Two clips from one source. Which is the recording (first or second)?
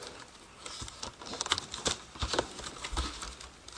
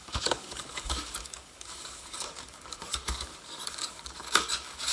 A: first